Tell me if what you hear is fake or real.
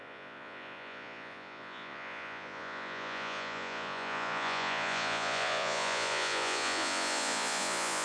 fake